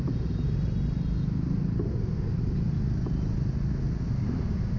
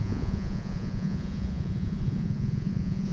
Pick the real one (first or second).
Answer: first